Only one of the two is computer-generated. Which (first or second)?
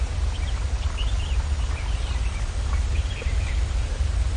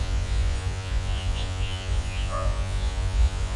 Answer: second